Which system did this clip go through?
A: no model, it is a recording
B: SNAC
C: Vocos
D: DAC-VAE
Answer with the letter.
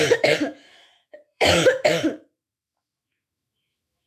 D